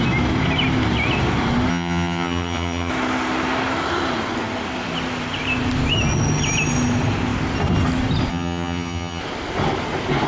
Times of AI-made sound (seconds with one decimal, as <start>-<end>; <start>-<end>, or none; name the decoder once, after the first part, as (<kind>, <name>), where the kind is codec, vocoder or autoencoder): 1.7-2.9 (vocoder, HiFi-GAN); 8.3-9.2